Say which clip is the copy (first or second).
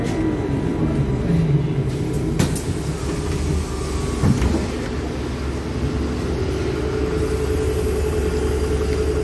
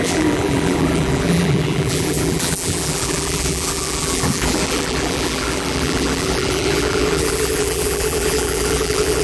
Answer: second